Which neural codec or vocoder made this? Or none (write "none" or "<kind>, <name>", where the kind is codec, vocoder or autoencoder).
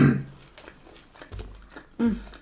none